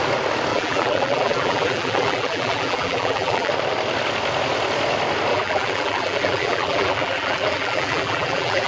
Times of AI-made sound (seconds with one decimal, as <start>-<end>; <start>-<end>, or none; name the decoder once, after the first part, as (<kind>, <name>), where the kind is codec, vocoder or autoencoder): 0.5-3.5 (vocoder, BigVGAN v2); 5.3-8.7